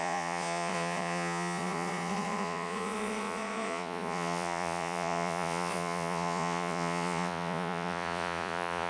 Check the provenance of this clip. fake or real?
fake